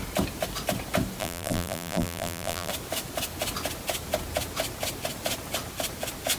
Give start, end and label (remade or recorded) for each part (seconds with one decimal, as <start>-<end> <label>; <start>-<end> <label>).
0.0-1.2 recorded; 1.2-2.7 remade; 2.7-6.4 recorded